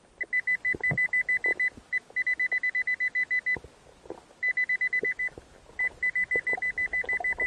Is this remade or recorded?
recorded